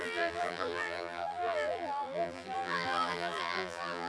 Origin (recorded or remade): remade